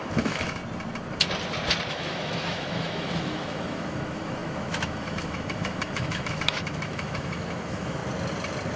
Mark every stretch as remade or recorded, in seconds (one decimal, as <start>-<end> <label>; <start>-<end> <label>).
0.0-0.6 remade; 0.6-1.9 recorded; 1.9-8.0 remade; 8.0-8.8 recorded